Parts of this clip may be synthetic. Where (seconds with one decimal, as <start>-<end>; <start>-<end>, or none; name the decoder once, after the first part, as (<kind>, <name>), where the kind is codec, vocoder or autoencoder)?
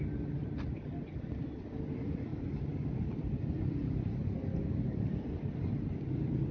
none